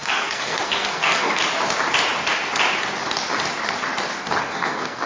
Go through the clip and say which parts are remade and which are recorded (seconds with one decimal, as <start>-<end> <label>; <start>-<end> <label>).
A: 0.0-1.4 remade; 1.4-4.4 recorded; 4.4-5.1 remade